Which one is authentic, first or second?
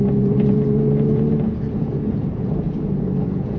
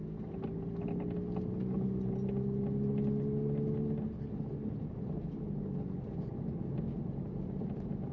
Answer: second